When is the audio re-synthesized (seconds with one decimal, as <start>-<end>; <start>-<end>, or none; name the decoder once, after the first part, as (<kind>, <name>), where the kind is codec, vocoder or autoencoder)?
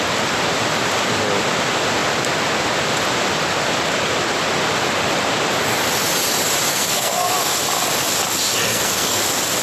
6.7-7.3 (codec, SNAC); 8.6-9.2